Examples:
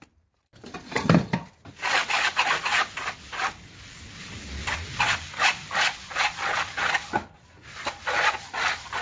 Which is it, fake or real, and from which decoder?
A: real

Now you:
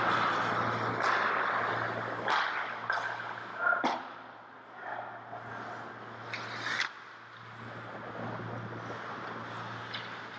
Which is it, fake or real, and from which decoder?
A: real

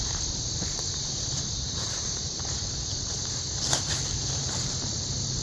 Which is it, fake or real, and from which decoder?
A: fake, vocoder, BigVGAN v2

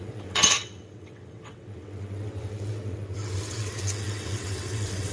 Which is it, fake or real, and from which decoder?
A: fake, vocoder, WaveNeXt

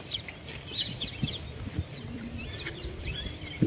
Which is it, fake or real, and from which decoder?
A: fake, vocoder, BigVGAN v2